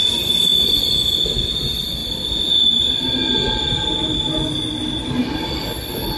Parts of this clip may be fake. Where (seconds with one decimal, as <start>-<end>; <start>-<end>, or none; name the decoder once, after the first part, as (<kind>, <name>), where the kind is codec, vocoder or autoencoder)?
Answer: none